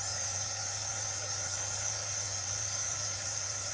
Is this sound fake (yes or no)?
yes